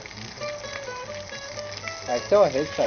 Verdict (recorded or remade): recorded